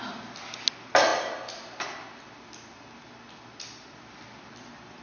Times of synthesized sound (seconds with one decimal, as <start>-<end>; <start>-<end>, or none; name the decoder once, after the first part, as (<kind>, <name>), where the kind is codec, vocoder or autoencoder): none